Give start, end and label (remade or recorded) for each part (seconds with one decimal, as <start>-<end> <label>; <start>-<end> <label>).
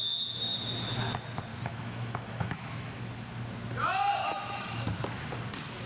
0.0-1.5 recorded; 1.5-3.0 remade; 3.0-4.2 recorded; 4.2-4.8 remade; 4.8-5.9 recorded